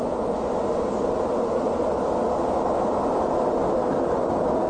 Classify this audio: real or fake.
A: real